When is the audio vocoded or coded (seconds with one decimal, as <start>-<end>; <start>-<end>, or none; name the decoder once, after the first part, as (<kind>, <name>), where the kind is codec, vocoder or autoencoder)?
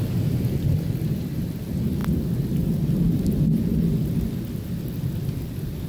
none